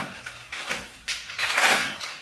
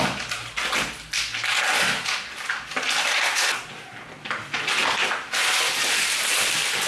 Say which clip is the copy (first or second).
first